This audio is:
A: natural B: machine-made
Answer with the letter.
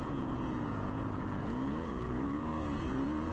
B